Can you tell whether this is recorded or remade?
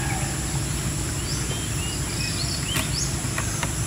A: recorded